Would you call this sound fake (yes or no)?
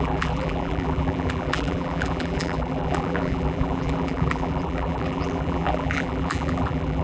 yes